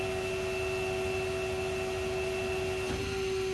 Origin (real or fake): real